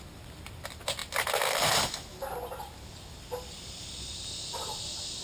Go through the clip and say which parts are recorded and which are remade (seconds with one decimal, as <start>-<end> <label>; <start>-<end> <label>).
0.0-1.0 remade; 1.0-2.6 recorded; 2.6-5.2 remade

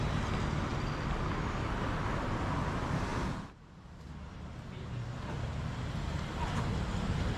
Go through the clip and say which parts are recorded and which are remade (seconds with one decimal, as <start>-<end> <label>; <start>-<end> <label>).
0.0-7.4 recorded